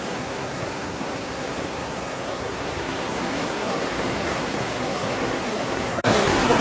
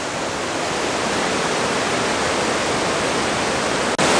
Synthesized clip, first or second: first